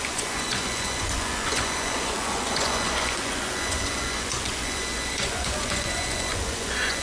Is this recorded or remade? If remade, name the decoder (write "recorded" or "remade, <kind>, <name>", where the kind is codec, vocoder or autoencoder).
remade, vocoder, Vocos